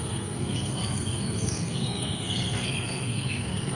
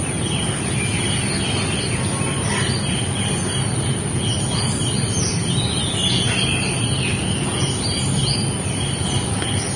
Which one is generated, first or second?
first